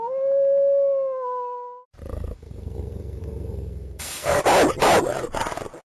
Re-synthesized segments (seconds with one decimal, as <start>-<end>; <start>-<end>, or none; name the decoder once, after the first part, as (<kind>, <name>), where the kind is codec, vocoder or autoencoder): 2.1-4.4 (codec, SNAC)